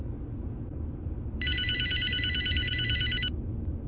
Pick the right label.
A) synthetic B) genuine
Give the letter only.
B